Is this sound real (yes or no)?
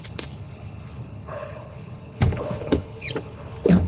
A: no